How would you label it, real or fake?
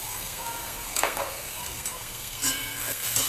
fake